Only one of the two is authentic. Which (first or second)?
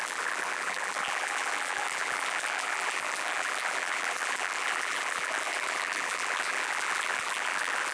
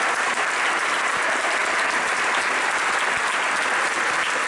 second